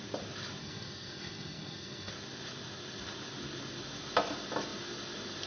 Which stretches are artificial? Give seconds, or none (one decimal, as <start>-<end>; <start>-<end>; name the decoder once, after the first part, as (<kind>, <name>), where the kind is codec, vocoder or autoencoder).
0.6-2.1 (codec, SNAC)